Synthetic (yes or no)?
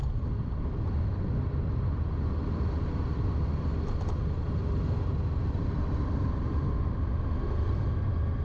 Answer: no